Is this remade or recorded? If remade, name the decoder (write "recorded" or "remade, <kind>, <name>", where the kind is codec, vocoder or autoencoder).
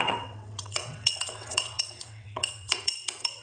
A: remade, vocoder, WaveNeXt